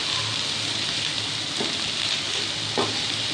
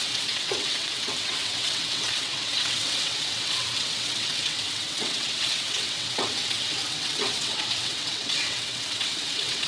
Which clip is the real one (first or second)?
first